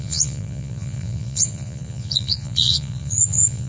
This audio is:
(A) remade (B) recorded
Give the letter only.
A